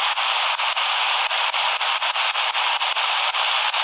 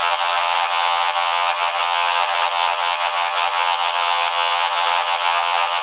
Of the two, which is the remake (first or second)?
second